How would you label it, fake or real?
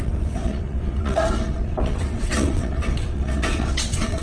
fake